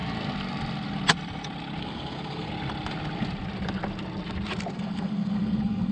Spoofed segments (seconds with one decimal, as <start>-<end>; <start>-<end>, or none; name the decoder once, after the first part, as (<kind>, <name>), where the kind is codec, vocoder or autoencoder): 1.8-2.5 (codec, SNAC); 4.7-5.9